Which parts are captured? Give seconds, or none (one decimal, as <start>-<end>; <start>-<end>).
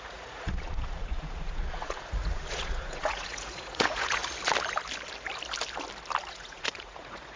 4.2-6.3